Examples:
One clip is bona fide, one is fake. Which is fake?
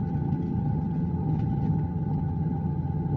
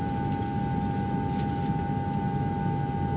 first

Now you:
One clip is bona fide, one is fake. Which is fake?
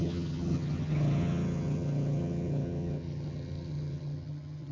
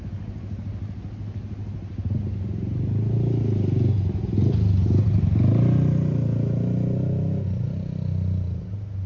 first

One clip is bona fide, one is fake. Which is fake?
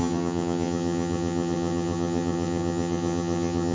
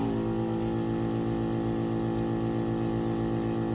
first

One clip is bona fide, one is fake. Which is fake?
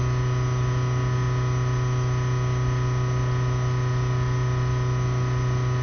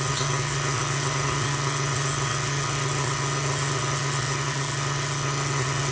second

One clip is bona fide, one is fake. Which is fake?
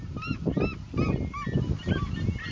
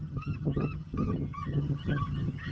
second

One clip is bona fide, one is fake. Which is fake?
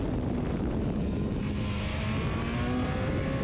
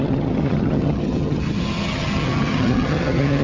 second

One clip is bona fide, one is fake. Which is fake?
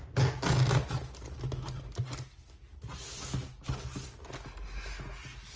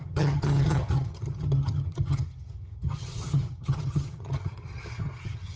second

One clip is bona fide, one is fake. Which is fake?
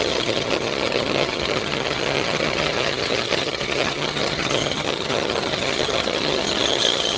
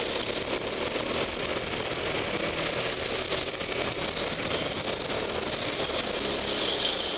first